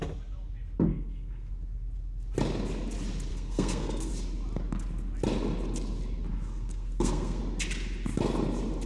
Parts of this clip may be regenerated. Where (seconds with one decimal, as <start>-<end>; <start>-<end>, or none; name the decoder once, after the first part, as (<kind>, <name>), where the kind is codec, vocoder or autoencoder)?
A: 0.9-1.5 (codec, SNAC); 3.3-4.1; 6.3-7.4